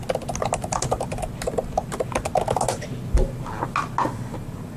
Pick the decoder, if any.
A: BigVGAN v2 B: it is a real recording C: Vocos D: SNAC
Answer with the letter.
B